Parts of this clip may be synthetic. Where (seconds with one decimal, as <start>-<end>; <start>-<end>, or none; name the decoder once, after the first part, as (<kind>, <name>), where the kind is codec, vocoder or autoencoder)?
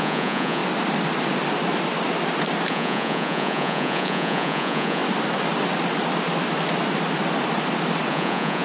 0.0-0.6 (vocoder, Vocos); 2.7-5.0; 8.1-8.6